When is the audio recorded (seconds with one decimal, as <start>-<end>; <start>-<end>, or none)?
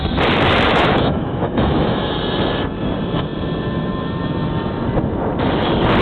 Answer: 0.0-0.7; 2.1-6.0